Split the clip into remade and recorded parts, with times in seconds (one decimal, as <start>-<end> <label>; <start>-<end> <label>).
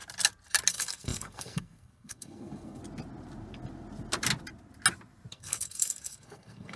0.0-0.7 recorded; 0.7-2.8 remade; 2.8-5.3 recorded; 5.3-6.8 remade